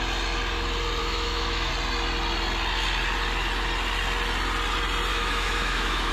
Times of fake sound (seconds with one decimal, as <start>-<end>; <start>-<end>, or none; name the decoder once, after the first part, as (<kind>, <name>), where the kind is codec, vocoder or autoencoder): 1.0-1.7 (autoencoder, DAC-VAE); 5.1-6.1